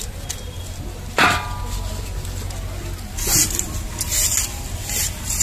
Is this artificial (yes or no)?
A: no